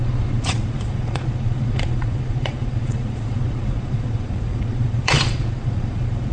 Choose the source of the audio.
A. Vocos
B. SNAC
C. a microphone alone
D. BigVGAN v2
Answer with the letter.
A